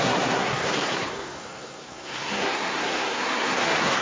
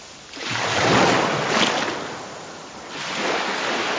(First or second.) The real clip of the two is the second